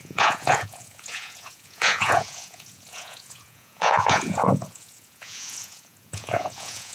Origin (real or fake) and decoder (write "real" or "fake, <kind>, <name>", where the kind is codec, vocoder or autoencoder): fake, vocoder, Vocos